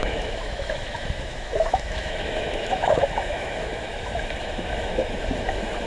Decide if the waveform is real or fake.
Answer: fake